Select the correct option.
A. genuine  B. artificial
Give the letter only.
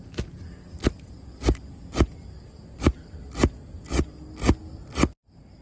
A